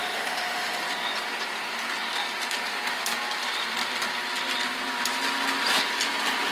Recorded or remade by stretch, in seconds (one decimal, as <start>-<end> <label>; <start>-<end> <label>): 0.0-0.8 remade; 0.8-6.5 recorded